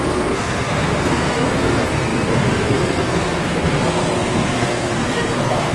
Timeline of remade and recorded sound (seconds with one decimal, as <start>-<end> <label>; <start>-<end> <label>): 0.0-5.7 remade